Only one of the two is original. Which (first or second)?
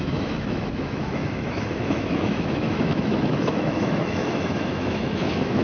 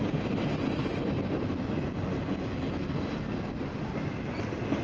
second